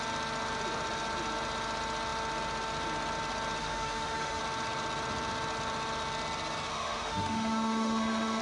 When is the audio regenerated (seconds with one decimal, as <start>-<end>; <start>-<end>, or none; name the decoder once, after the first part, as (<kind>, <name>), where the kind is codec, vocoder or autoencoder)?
3.6-4.4 (autoencoder, DAC-VAE); 6.7-8.4